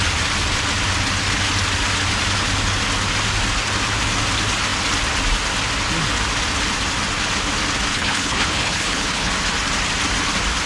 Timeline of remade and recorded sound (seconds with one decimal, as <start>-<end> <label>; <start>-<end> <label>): 0.0-7.9 recorded; 7.9-9.3 remade; 9.3-10.7 recorded